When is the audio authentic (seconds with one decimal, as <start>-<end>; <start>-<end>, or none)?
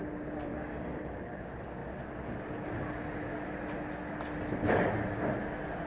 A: 0.0-0.5; 1.4-5.9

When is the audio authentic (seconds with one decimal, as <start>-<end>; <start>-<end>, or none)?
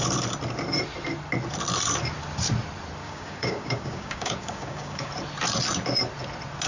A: 0.0-3.0; 5.1-6.7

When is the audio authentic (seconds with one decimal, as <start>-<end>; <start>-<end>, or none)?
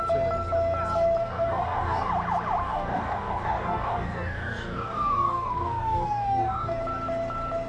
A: 0.0-1.2; 2.1-2.6; 6.8-7.7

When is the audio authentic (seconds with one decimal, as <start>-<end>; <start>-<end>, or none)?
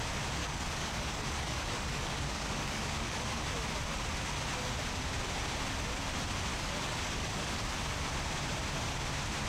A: 0.0-0.4; 3.4-6.5; 7.6-9.5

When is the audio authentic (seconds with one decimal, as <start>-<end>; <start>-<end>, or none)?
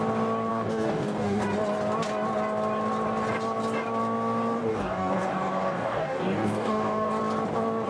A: 0.0-0.5; 1.4-4.7; 7.2-7.9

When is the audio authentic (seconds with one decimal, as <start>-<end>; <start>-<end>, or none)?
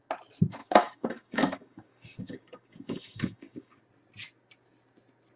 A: 0.0-0.6; 3.8-5.4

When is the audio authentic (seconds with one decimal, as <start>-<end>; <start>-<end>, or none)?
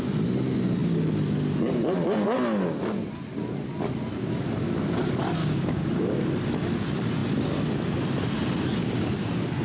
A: 0.0-5.4; 6.2-8.8